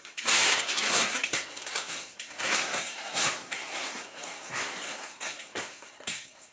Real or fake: fake